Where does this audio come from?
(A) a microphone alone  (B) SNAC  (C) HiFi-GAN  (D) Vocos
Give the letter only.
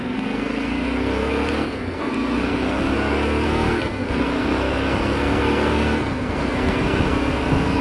B